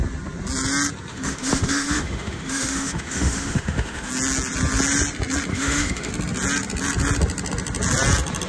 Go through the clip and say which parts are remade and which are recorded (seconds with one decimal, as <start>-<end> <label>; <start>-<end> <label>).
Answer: 0.0-1.1 recorded; 1.1-4.1 remade; 4.1-5.5 recorded; 5.5-6.1 remade; 6.1-8.5 recorded

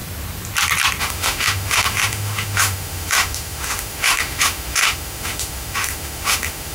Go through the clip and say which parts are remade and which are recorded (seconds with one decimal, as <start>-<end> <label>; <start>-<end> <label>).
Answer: 0.0-1.0 recorded; 1.0-6.7 remade

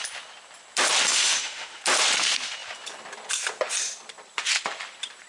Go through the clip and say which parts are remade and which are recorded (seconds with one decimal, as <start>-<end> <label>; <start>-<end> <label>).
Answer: 0.0-1.1 recorded; 1.1-1.8 remade; 1.8-5.3 recorded

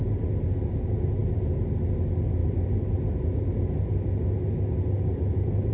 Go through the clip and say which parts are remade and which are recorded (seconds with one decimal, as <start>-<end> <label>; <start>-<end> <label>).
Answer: 0.0-5.7 recorded